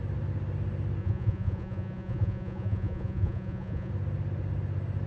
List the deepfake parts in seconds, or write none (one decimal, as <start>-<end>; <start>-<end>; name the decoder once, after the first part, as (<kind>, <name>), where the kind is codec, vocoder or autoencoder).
1.0-3.9 (vocoder, Vocos)

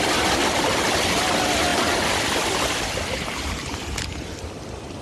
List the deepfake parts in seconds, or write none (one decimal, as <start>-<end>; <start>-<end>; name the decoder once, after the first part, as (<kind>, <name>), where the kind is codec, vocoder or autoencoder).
none